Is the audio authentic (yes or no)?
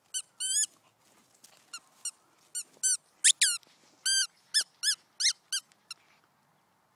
yes